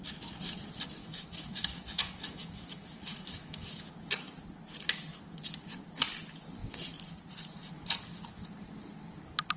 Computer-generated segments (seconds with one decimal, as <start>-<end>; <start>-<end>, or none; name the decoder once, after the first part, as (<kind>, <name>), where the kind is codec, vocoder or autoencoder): 1.0-3.9 (autoencoder, DAC-VAE)